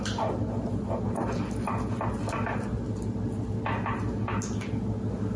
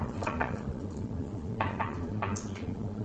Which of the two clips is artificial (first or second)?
second